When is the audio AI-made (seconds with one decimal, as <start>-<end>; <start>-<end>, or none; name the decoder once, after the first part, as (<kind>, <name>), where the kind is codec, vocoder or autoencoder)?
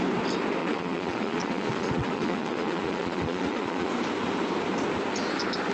0.6-3.9 (vocoder, Vocos)